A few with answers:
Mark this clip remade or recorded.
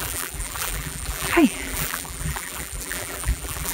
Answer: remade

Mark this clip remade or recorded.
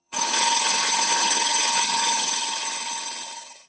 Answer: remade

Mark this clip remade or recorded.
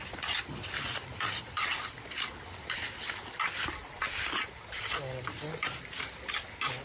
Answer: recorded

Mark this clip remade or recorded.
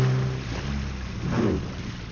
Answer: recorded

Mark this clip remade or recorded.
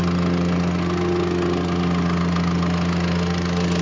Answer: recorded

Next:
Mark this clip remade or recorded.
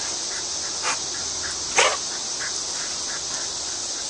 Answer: recorded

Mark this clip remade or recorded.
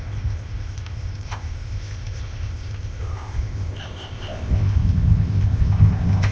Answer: remade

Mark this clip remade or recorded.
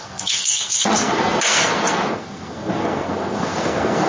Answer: remade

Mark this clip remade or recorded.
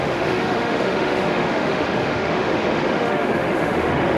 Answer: remade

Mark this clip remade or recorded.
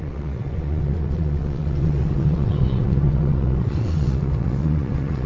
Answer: remade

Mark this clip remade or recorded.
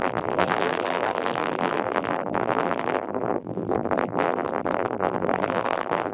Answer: remade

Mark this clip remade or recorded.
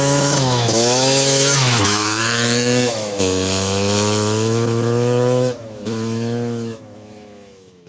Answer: remade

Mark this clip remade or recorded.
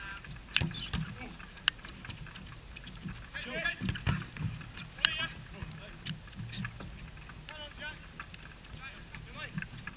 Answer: recorded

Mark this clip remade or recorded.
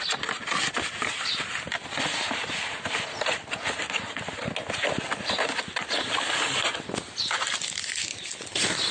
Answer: recorded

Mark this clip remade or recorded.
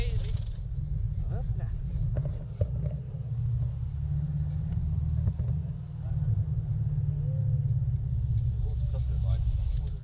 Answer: recorded